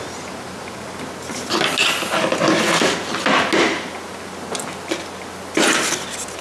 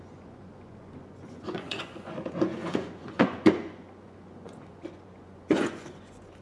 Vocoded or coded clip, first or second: second